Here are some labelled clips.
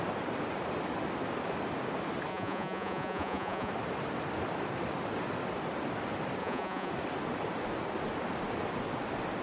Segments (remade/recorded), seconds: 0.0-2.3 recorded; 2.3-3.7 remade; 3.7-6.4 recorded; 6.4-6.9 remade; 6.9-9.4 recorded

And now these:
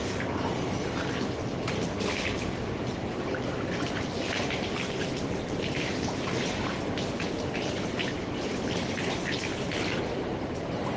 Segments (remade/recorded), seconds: 0.0-11.0 recorded

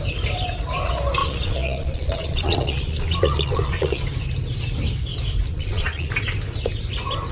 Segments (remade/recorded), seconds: 0.0-1.2 recorded; 1.2-4.0 remade; 4.0-5.5 recorded; 5.5-6.1 remade; 6.1-7.3 recorded